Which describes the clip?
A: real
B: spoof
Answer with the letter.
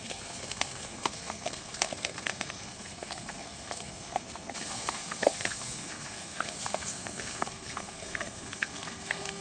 B